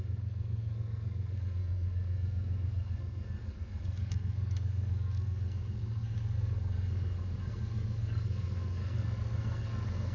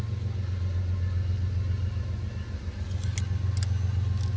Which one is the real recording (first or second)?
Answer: second